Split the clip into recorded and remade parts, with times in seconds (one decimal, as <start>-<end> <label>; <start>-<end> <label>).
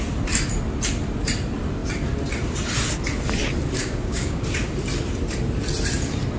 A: 0.0-3.8 recorded; 3.8-4.4 remade; 4.4-6.4 recorded